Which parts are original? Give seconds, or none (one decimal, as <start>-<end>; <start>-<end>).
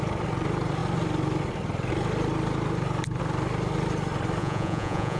0.0-4.4